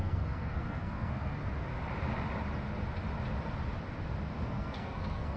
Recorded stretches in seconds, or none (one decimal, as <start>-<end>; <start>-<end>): 1.4-4.4